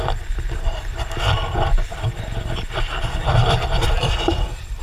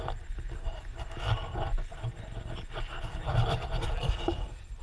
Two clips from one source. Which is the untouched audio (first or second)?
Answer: second